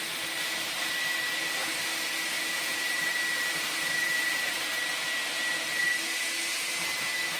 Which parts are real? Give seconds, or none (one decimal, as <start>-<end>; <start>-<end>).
0.0-2.7; 5.8-7.4